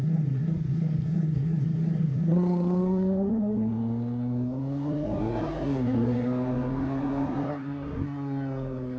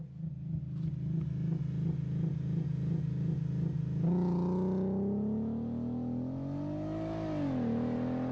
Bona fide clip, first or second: second